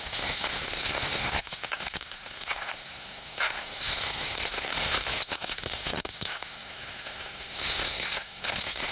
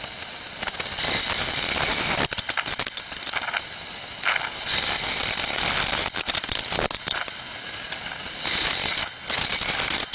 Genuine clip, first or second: second